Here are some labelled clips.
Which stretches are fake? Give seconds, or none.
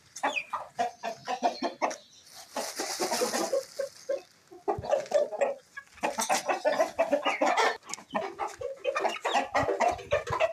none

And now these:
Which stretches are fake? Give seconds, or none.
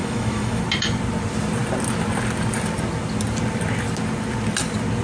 0.0-0.6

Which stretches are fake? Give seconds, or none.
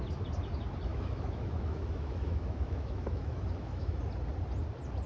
0.9-4.0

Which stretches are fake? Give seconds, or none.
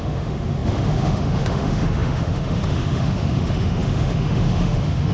0.0-5.1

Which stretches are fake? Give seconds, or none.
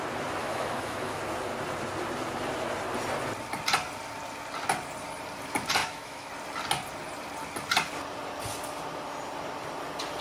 0.4-1.2; 5.8-6.3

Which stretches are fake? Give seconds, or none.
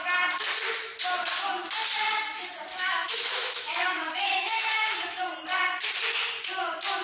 2.7-5.3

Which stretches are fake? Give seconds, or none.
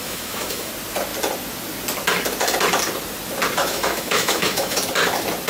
0.0-0.7; 3.6-4.8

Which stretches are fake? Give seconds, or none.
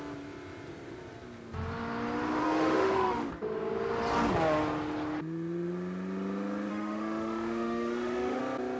2.4-3.3; 6.7-8.4